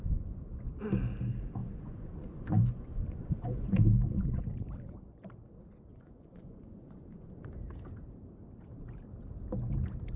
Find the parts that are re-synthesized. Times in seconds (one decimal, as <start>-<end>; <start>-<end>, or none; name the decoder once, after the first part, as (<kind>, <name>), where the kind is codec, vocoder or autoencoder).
1.6-4.4 (vocoder, Vocos); 5.9-7.6